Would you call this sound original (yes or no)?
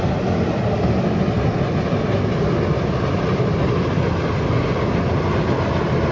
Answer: yes